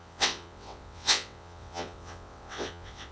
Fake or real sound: fake